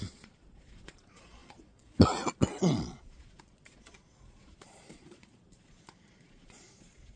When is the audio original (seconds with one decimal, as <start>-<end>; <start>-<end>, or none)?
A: none